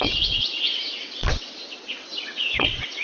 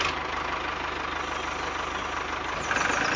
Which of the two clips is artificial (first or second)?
first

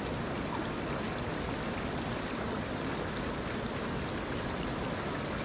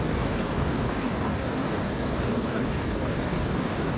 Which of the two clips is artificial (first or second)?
second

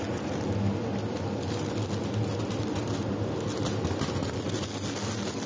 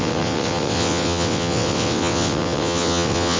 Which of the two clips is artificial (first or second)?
second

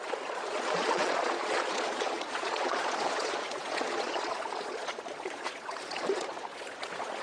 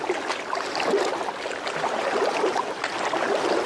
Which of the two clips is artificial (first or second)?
first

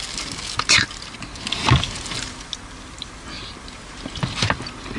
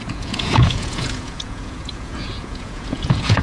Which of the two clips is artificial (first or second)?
second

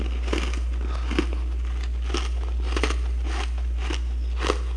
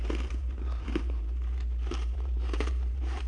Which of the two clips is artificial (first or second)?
second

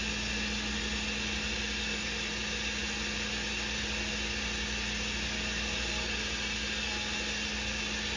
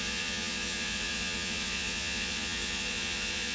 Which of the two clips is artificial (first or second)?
second